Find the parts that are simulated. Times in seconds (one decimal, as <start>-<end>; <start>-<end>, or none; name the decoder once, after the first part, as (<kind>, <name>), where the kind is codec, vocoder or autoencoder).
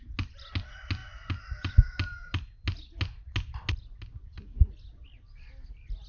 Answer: none